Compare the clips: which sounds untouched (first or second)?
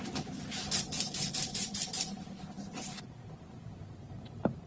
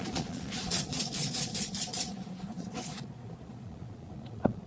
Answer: first